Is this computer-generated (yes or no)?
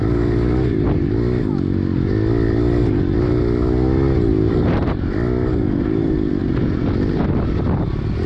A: no